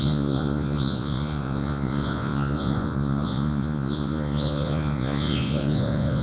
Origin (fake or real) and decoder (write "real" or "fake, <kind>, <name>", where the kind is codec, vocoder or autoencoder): fake, vocoder, Vocos